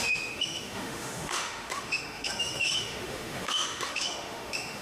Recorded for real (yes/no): no